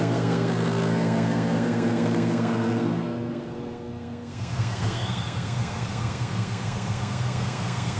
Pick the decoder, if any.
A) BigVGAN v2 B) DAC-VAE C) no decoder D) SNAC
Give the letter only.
D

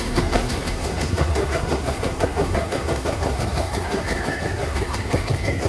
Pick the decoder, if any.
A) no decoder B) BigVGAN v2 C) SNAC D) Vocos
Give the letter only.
C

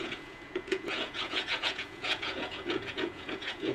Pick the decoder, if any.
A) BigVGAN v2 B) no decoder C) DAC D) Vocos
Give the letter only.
D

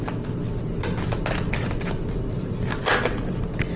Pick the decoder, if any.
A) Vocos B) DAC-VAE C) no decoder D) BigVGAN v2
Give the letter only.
C